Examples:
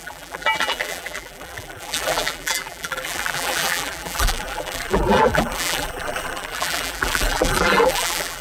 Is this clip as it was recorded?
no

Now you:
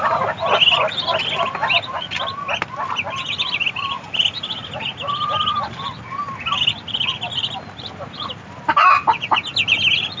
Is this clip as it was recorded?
yes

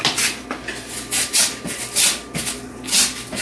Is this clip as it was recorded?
yes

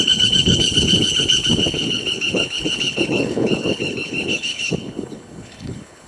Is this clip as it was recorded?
no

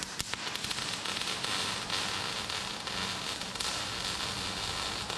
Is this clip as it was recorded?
yes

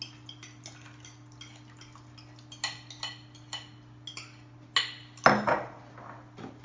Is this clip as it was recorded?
yes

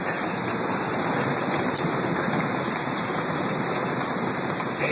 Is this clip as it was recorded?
no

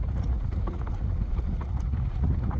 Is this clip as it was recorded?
no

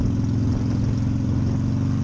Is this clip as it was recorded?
yes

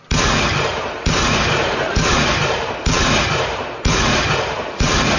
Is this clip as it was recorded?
no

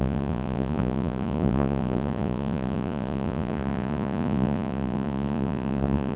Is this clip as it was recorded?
no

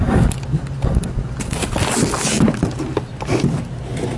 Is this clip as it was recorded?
yes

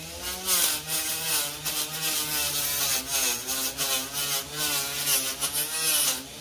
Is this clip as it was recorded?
yes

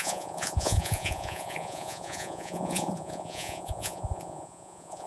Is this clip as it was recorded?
no